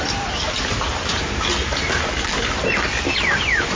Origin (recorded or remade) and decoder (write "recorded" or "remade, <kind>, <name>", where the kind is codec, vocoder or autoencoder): recorded